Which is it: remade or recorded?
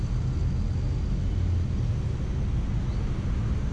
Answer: recorded